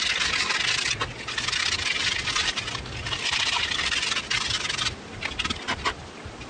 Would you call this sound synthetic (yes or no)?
no